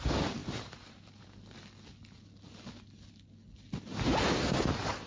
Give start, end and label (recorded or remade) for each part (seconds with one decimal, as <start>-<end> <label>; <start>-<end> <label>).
0.0-0.4 recorded; 0.4-1.3 remade; 1.3-5.1 recorded